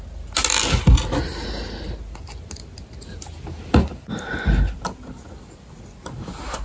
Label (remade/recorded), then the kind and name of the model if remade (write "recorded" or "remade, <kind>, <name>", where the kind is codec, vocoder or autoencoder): recorded